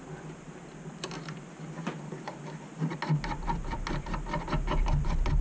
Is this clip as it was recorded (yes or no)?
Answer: yes